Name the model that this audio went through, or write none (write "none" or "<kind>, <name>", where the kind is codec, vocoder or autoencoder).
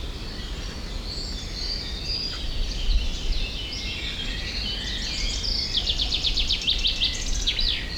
none